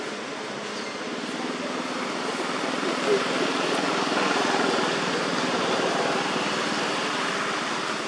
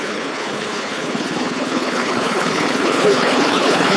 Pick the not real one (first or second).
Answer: second